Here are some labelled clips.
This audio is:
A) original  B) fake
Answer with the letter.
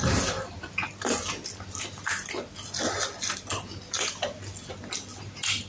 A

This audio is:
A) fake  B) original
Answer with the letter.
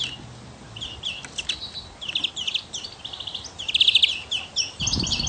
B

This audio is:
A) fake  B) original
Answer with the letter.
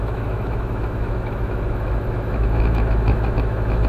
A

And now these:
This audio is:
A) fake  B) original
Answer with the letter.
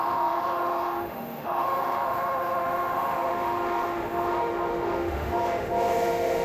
A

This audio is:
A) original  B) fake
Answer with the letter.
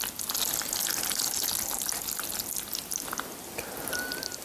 A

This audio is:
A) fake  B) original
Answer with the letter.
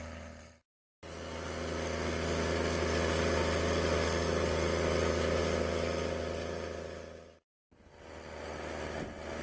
B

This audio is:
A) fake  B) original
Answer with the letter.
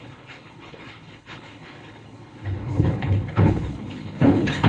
A